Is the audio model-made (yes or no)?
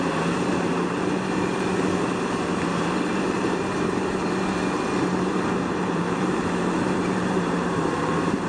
yes